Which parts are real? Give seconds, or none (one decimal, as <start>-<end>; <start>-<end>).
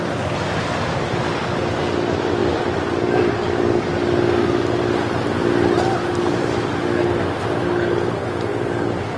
0.0-2.4; 3.8-9.2